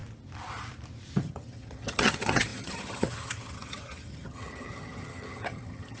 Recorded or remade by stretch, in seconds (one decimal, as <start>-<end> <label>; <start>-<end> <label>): 0.0-1.2 recorded; 1.2-6.0 remade

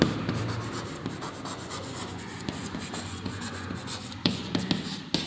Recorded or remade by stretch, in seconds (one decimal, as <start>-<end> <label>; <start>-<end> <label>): 0.0-1.5 recorded; 1.5-4.7 remade; 4.7-5.3 recorded

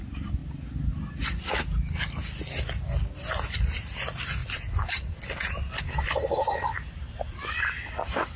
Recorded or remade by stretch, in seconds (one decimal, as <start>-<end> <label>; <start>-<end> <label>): 0.0-8.4 recorded